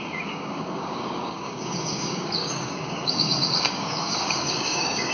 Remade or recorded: remade